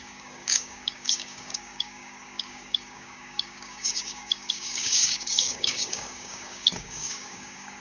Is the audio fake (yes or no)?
yes